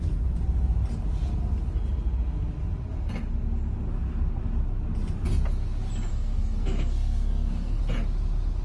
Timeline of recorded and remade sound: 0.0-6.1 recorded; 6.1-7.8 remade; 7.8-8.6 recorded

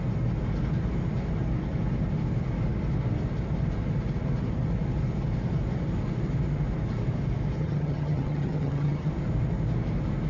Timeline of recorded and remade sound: 0.0-7.6 recorded; 7.6-9.1 remade; 9.1-10.3 recorded